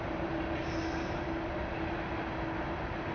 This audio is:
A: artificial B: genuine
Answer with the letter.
B